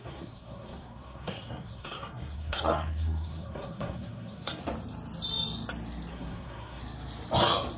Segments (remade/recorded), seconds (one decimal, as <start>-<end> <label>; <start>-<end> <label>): 0.0-4.6 remade; 4.6-6.1 recorded; 6.1-6.8 remade; 6.8-7.8 recorded

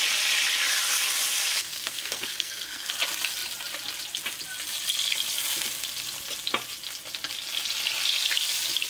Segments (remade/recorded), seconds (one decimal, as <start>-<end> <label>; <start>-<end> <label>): 0.0-1.5 recorded; 1.5-2.9 remade; 2.9-8.9 recorded

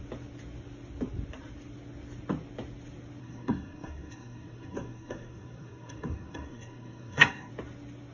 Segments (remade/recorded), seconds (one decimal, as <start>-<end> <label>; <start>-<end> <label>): 0.0-3.2 recorded; 3.2-7.5 remade; 7.5-8.1 recorded